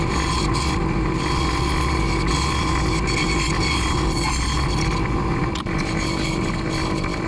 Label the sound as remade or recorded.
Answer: recorded